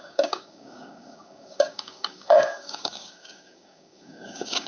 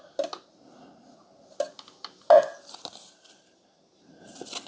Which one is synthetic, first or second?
first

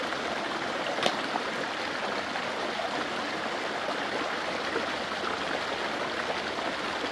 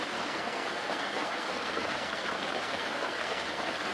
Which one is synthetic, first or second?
second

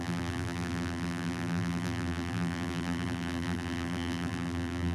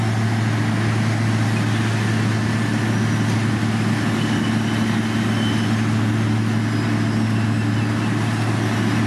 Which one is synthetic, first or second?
first